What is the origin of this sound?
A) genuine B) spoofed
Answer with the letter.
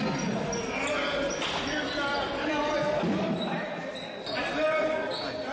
A